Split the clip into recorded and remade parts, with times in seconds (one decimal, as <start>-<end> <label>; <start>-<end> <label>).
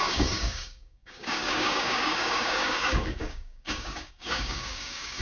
0.0-5.2 remade